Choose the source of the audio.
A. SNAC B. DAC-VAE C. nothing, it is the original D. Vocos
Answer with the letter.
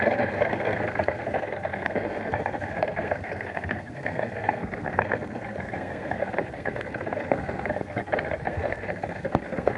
A